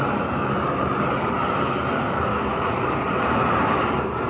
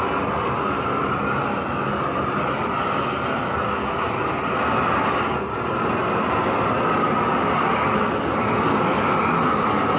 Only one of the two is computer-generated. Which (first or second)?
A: first